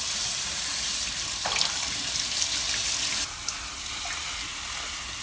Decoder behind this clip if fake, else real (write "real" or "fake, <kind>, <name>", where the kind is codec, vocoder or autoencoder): real